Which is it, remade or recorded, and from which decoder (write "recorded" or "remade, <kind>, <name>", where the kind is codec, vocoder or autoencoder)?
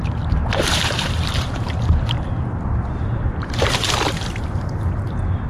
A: remade, vocoder, BigVGAN v2